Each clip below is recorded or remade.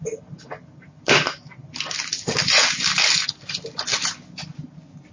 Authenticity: recorded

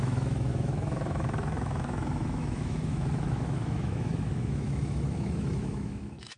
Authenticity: remade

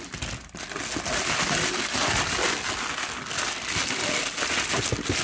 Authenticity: recorded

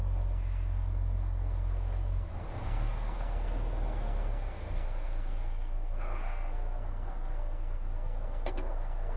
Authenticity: remade